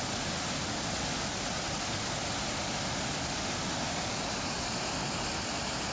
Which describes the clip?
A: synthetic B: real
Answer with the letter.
B